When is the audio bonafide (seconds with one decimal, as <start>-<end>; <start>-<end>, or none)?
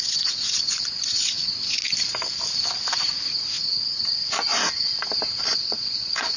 1.8-5.6